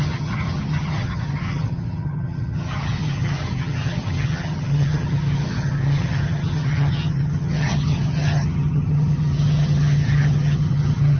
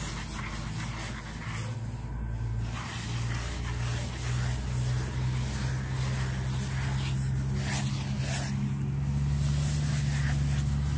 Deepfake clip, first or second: first